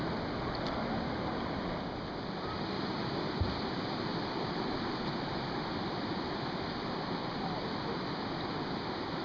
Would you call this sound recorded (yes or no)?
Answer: yes